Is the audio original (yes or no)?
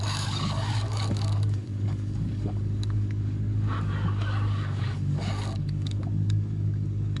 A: no